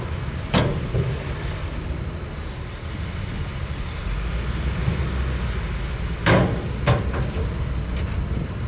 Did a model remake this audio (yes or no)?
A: no